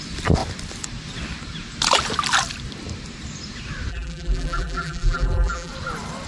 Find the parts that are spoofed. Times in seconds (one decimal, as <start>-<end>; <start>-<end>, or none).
3.9-5.7